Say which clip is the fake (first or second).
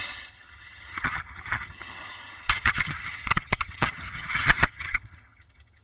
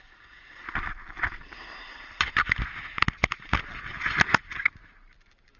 first